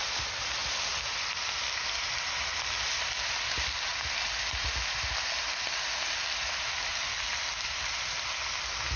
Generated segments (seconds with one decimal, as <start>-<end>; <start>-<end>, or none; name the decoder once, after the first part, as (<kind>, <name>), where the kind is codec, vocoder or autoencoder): none